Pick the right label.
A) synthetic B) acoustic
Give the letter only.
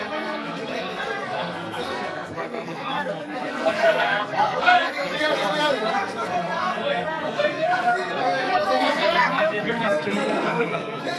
A